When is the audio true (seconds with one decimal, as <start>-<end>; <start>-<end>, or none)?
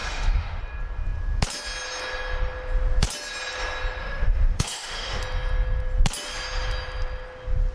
0.6-4.0; 5.2-7.7